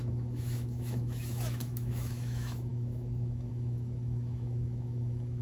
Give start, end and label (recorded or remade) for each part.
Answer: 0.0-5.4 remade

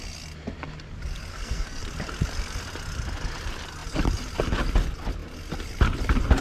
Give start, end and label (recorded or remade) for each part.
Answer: 0.0-1.3 recorded; 1.3-1.8 remade; 1.8-6.4 recorded

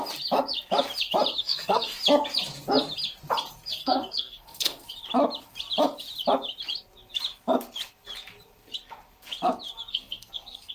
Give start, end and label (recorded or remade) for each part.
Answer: 0.0-1.4 recorded; 1.4-2.0 remade; 2.0-3.8 recorded; 3.8-4.9 remade; 4.9-9.9 recorded; 9.9-10.7 remade